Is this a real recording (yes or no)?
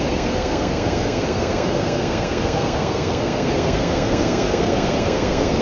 no